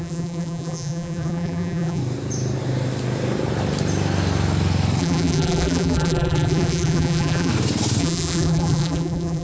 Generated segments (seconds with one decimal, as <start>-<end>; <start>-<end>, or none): 0.0-2.0; 5.0-7.5; 8.0-9.4